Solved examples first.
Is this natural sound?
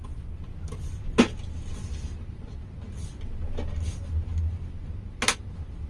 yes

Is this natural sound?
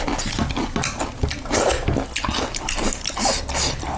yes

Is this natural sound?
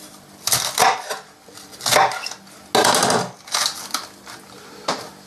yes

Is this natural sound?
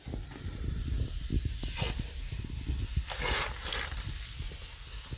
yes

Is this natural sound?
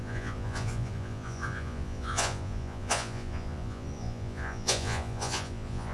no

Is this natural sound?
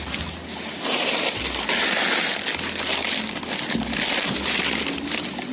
no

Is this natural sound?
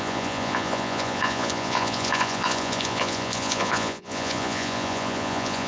no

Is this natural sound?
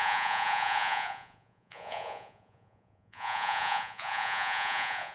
no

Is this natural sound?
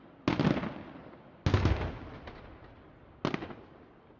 yes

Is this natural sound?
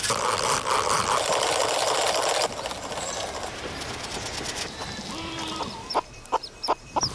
no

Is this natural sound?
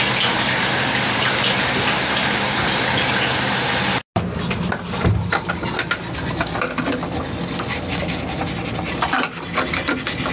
yes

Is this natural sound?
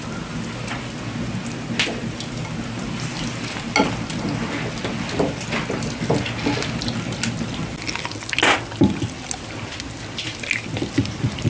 yes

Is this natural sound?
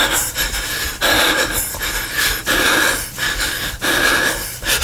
yes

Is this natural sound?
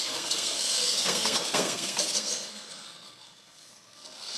no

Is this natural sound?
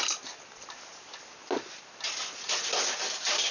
yes